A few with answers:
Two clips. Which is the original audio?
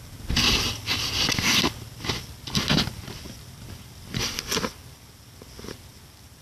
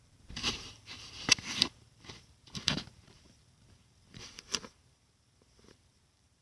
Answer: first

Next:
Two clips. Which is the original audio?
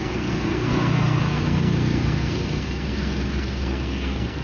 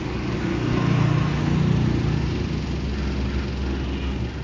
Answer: second